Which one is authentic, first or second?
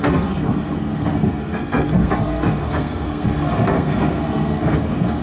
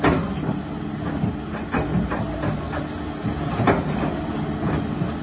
second